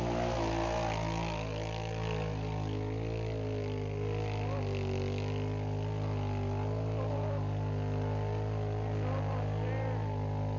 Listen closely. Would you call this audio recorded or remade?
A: recorded